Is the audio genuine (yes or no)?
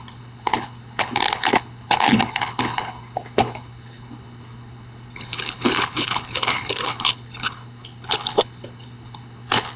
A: no